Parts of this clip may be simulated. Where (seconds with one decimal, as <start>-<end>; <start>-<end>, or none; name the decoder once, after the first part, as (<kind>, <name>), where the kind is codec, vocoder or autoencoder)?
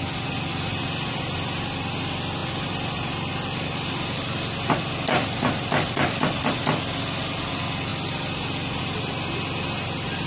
2.4-7.5 (vocoder, BigVGAN v2)